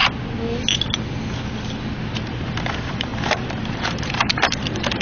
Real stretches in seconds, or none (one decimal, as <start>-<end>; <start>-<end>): 0.0-2.0